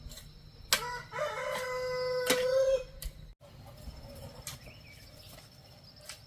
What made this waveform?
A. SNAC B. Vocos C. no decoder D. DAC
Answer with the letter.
C